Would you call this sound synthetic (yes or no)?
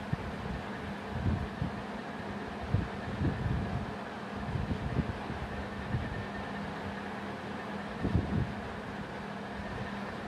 no